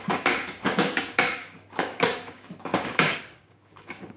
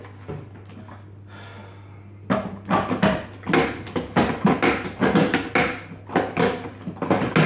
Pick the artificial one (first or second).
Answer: first